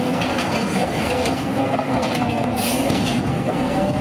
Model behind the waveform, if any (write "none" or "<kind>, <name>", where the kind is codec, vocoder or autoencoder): codec, SNAC